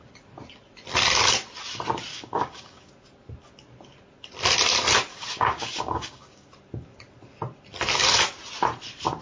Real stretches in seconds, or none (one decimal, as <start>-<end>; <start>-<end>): 0.0-2.1; 2.9-5.1; 6.5-9.2

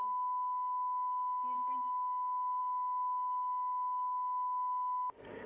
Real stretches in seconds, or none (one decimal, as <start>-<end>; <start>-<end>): none

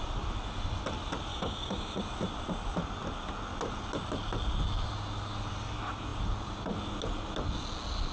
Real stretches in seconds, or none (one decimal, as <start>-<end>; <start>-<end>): 0.0-1.3; 2.0-8.1

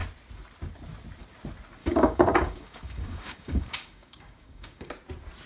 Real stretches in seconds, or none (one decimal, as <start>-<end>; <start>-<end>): 0.0-1.8; 4.9-5.5

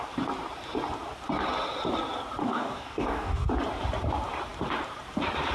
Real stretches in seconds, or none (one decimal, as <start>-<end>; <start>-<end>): 0.0-2.4; 3.5-5.5

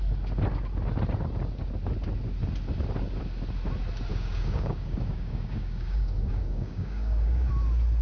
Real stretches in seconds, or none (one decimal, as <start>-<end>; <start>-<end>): 0.0-4.1; 7.5-8.0

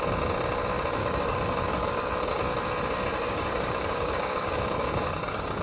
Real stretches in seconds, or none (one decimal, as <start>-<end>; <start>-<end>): 0.0-1.0; 2.1-3.1

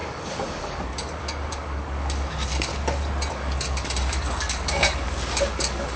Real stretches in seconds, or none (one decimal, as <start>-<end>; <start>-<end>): 2.7-3.3